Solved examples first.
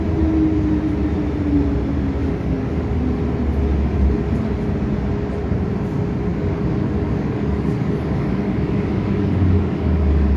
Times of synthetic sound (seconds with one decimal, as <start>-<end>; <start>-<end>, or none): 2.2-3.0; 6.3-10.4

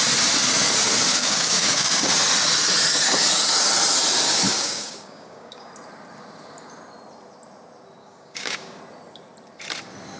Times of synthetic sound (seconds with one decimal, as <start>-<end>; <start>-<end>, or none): 1.1-2.1; 4.5-5.7; 8.0-8.8

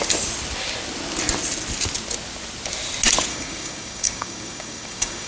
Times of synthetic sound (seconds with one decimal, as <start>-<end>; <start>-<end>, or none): 3.3-5.3

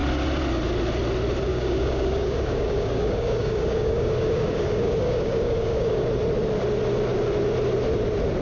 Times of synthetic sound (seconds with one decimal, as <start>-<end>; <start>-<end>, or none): 1.5-6.1

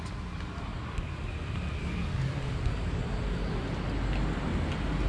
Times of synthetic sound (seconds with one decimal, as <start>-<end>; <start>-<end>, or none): 0.7-1.3; 1.8-3.0

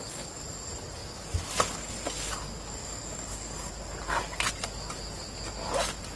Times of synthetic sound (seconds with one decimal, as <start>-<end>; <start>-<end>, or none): 2.8-3.7